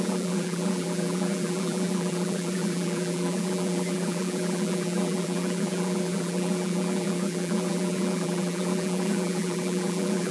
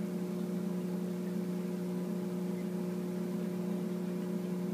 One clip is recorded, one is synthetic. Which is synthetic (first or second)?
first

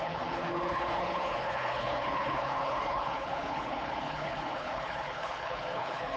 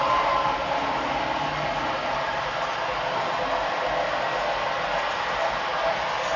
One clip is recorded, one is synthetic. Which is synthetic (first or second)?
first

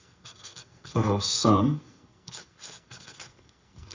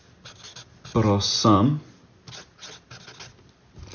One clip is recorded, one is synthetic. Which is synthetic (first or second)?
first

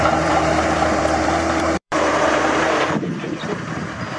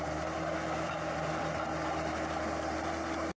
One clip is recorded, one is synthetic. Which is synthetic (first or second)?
first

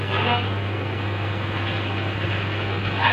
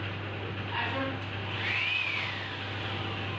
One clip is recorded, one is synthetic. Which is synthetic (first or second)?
first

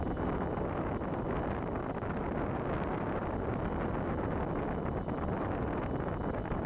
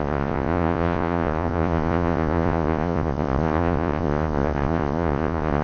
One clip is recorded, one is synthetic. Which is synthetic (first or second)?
second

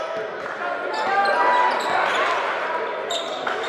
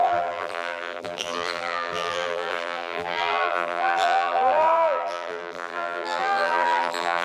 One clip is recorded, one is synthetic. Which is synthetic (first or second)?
second